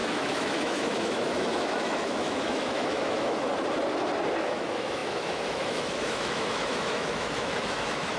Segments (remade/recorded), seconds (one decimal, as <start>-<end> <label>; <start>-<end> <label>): 0.0-3.5 remade; 3.5-4.4 recorded; 4.4-8.2 remade